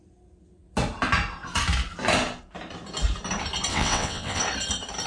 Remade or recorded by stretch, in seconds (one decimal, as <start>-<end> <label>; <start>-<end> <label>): 0.0-3.7 recorded; 3.7-4.4 remade; 4.4-5.1 recorded

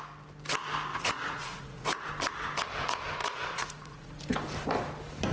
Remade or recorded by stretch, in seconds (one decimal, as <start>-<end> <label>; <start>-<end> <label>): 0.0-0.9 recorded; 0.9-2.1 remade; 2.1-3.2 recorded; 3.2-4.2 remade; 4.2-5.3 recorded

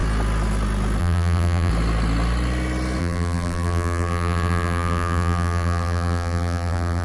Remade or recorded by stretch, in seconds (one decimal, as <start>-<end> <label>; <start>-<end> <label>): 0.0-1.0 recorded; 1.0-1.7 remade; 1.7-3.0 recorded; 3.0-7.0 remade